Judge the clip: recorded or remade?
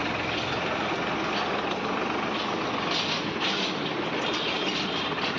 recorded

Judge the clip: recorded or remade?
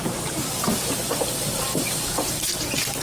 remade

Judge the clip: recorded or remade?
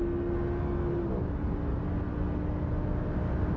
recorded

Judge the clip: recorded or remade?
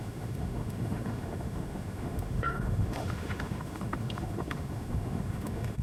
remade